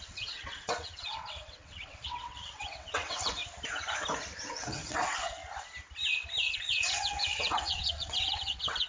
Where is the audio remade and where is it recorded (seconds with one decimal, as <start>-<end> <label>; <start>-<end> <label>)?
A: 0.0-3.4 remade; 3.4-4.5 recorded; 4.5-5.4 remade; 5.4-6.5 recorded; 6.5-8.9 remade